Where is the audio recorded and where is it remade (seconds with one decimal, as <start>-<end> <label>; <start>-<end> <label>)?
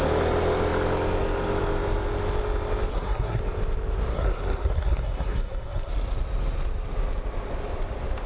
0.0-2.9 recorded; 2.9-3.4 remade; 3.4-4.1 recorded; 4.1-5.9 remade; 5.9-8.3 recorded